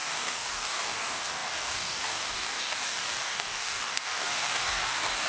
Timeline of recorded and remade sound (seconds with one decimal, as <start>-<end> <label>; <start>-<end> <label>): 0.0-5.3 remade